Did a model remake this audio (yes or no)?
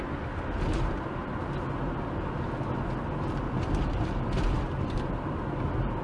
no